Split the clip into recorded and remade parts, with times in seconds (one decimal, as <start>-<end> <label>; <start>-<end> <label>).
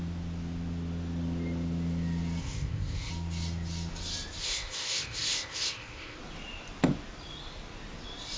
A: 0.0-2.4 recorded; 2.4-3.1 remade; 3.1-4.4 recorded; 4.4-6.2 remade; 6.2-8.4 recorded